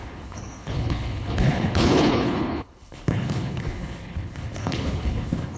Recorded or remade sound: remade